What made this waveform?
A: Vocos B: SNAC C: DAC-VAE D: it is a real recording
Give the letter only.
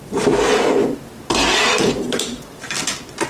D